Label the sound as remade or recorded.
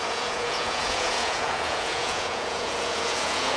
remade